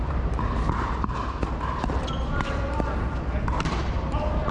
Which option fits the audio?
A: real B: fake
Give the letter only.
B